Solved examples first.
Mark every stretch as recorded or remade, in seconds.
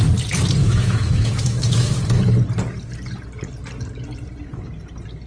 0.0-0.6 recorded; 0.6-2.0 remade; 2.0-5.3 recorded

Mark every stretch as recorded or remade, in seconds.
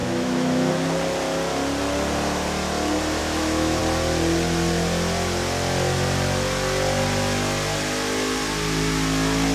0.0-0.7 remade; 0.7-3.2 recorded; 3.2-3.8 remade; 3.8-9.5 recorded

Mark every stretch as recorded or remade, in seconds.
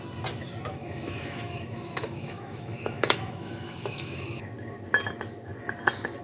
0.0-0.7 recorded; 0.7-4.4 remade; 4.4-6.2 recorded